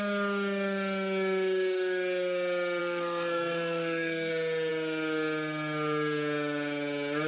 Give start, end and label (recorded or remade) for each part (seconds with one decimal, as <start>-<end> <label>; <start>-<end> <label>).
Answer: 0.0-2.8 recorded; 2.8-4.3 remade; 4.3-7.3 recorded